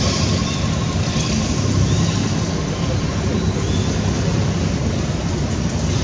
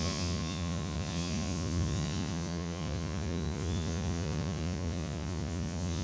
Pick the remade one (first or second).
second